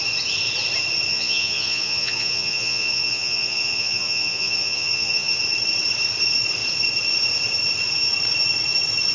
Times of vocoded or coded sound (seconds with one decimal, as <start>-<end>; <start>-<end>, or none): 1.1-5.4